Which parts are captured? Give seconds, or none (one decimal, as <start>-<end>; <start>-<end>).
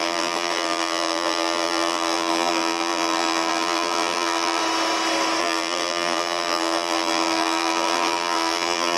4.6-5.4